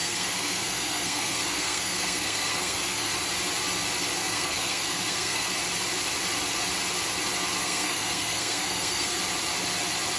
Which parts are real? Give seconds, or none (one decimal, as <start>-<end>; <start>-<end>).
3.1-4.2; 5.5-7.6; 9.2-10.2